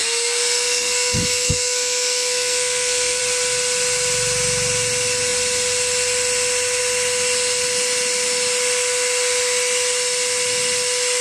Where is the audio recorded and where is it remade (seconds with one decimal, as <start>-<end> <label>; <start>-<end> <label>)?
0.0-3.2 remade; 3.2-11.2 recorded